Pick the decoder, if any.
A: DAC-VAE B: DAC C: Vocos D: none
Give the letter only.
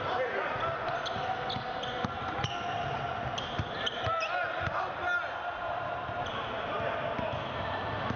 D